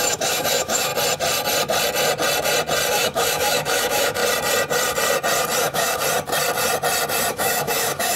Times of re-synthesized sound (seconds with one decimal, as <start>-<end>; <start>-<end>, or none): 0.0-0.9; 2.9-4.2; 5.6-6.0; 7.3-8.2